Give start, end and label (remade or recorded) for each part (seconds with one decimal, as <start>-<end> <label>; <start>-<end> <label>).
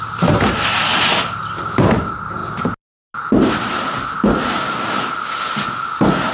0.0-6.3 recorded